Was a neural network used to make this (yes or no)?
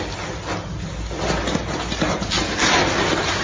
no